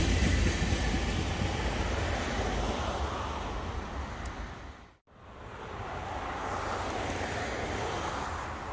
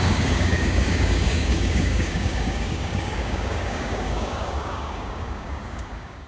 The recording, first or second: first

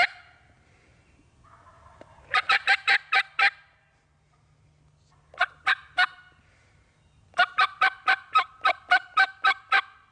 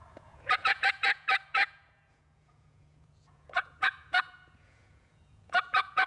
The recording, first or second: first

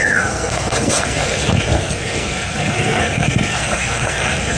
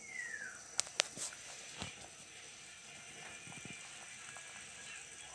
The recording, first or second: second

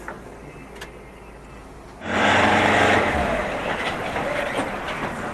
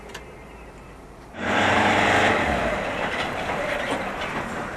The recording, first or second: first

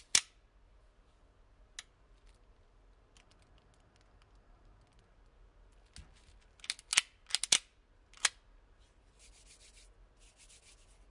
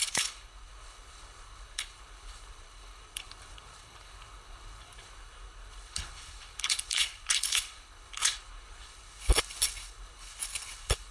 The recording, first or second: first